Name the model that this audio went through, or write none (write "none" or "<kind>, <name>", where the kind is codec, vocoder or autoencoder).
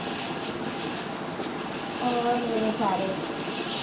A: none